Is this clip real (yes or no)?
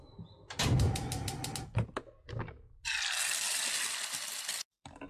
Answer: yes